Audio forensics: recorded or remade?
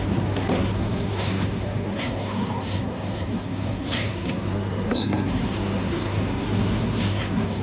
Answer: remade